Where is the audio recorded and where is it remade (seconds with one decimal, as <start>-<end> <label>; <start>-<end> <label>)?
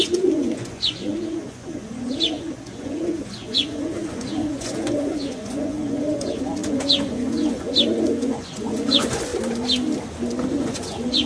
0.0-9.3 remade; 9.3-10.5 recorded; 10.5-11.3 remade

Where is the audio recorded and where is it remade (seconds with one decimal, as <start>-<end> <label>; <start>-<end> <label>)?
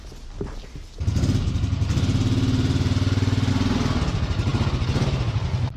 0.0-5.8 recorded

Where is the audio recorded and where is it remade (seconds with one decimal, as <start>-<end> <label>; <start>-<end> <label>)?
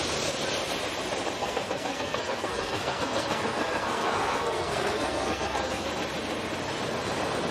0.0-1.4 recorded; 1.4-5.9 remade; 5.9-7.5 recorded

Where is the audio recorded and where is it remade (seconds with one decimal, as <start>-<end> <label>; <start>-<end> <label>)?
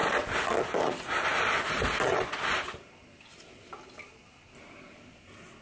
0.0-5.6 recorded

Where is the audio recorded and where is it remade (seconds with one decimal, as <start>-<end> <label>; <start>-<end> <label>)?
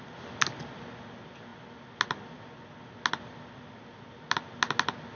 0.0-5.2 recorded